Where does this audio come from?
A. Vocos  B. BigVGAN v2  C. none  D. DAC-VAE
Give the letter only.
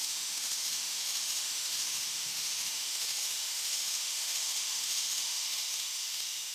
D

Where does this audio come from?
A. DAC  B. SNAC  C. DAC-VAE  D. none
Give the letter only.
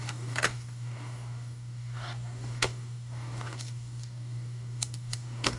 A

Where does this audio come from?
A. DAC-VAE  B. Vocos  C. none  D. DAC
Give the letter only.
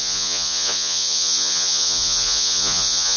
B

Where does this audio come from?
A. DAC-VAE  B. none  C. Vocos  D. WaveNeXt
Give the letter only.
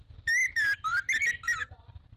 B